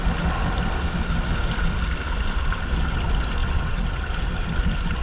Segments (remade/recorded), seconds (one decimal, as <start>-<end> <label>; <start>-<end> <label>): 0.0-3.4 recorded; 3.4-3.9 remade; 3.9-5.0 recorded